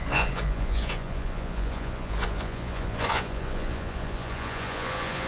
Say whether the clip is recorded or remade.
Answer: remade